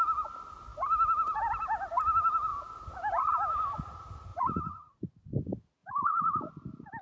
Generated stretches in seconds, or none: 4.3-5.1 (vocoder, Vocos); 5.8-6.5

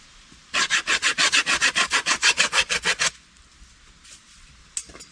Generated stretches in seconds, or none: 1.0-3.1 (vocoder, Vocos)